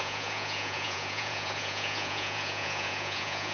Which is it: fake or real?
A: fake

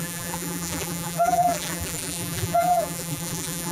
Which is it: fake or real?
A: fake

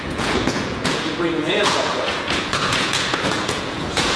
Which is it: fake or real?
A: fake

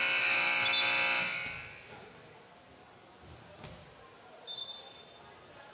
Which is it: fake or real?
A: real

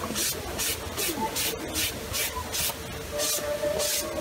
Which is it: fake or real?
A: real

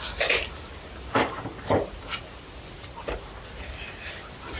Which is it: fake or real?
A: real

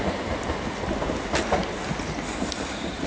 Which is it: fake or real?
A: real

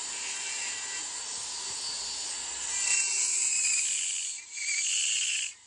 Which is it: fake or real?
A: real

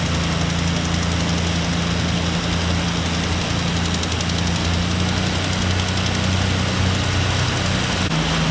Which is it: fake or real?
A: real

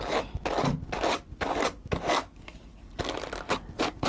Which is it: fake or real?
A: real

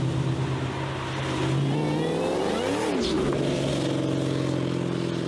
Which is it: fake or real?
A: real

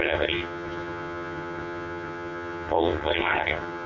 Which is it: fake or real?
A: fake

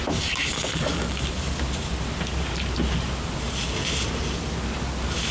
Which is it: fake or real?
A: real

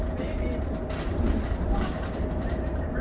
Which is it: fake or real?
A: fake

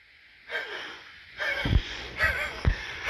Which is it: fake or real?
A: fake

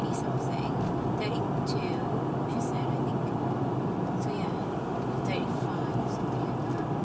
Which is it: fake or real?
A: real